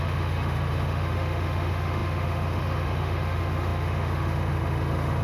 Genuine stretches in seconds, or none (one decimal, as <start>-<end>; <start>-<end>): none